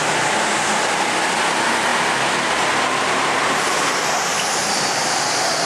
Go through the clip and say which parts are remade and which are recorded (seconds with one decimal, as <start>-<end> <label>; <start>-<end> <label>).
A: 0.0-5.7 recorded